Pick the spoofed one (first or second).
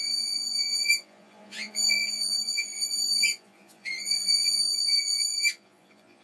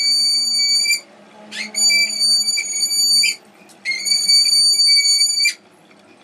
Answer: first